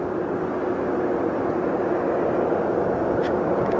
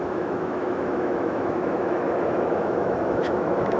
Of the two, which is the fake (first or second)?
second